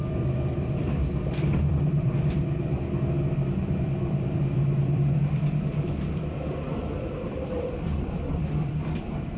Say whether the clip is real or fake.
fake